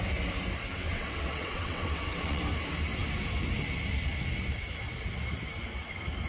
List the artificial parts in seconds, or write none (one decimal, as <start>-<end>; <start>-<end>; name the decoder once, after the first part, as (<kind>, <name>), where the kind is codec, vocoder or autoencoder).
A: 0.8-2.4 (vocoder, WaveNeXt)